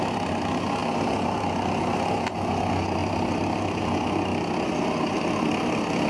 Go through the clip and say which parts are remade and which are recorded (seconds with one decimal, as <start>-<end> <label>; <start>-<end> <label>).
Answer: 0.0-6.1 recorded